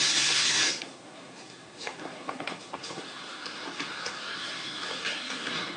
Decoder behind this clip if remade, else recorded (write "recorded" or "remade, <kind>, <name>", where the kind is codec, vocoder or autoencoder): remade, codec, SNAC